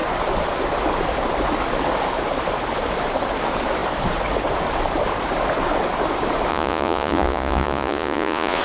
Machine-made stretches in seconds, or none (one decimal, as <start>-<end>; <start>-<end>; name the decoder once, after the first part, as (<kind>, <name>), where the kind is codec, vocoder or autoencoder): 6.5-8.6 (vocoder, Vocos)